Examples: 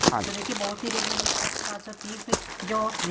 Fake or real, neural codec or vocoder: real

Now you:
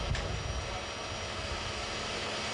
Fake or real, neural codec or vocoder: real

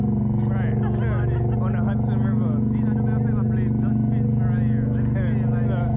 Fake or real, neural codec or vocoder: real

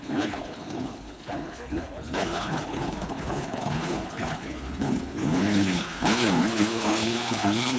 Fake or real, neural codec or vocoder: fake, codec, HILCodec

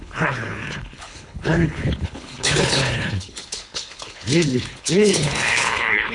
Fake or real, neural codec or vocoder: fake, codec, HILCodec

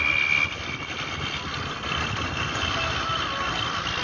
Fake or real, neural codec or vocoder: real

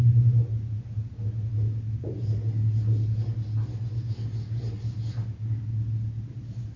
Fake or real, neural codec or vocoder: real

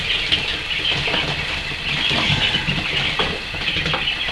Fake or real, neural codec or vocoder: real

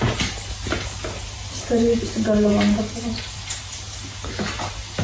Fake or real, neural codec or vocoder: real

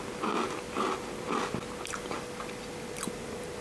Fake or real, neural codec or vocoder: real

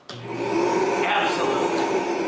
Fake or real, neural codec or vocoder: real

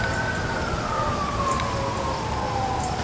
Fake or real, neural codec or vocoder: real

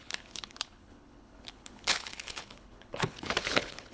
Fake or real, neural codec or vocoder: fake, codec, HILCodec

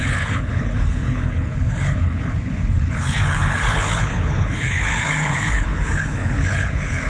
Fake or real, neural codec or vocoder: fake, codec, HILCodec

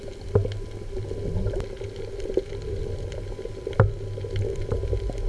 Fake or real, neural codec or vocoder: real